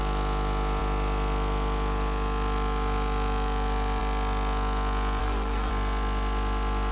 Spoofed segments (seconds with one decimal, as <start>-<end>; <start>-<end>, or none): 5.2-5.7